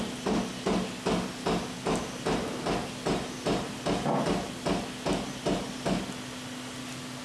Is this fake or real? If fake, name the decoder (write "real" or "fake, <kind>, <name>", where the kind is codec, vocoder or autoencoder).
real